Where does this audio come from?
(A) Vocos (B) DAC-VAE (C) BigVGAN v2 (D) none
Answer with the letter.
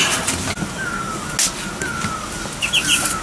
D